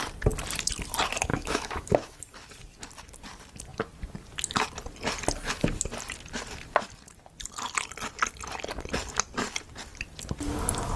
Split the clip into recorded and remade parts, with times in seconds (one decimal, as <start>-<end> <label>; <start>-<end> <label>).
0.0-1.3 recorded; 1.3-2.2 remade; 2.2-11.0 recorded